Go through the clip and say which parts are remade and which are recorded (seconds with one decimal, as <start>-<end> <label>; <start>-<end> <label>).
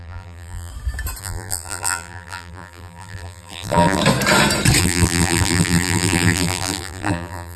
0.0-0.7 remade; 0.7-1.2 recorded; 1.2-4.0 remade; 4.0-4.8 recorded; 4.8-7.6 remade